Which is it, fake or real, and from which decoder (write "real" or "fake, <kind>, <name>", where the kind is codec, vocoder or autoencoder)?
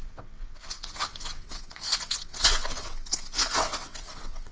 fake, vocoder, WaveNeXt